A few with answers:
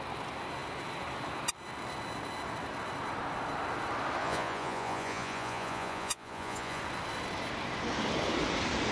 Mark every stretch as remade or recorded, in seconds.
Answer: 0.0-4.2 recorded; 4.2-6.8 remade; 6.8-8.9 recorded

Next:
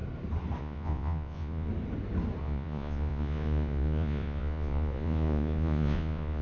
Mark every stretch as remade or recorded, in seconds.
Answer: 0.0-0.6 recorded; 0.6-1.7 remade; 1.7-2.4 recorded; 2.4-6.4 remade